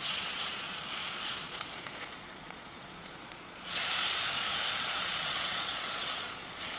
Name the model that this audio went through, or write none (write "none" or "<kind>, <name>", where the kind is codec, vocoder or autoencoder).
vocoder, Vocos